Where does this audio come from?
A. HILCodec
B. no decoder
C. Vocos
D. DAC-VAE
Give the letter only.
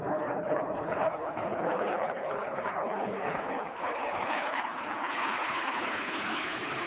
A